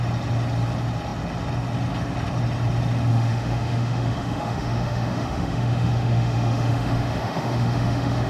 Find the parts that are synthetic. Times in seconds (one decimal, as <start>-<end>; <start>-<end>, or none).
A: 3.1-8.3